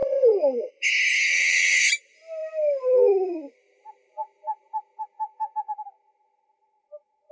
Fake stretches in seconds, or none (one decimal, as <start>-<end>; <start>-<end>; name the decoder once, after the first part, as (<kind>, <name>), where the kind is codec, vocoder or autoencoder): 0.0-0.7 (vocoder, WaveNeXt); 1.3-1.8